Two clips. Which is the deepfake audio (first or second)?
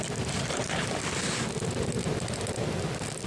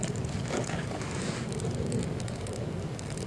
second